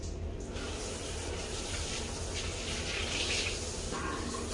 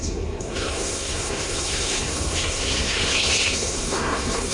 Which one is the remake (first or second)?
second